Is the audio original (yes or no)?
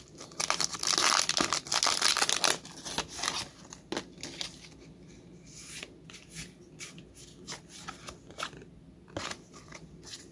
yes